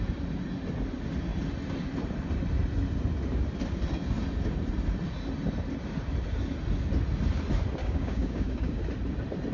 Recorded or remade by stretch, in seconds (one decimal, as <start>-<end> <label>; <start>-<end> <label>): 0.0-7.8 recorded; 7.8-8.8 remade; 8.8-9.5 recorded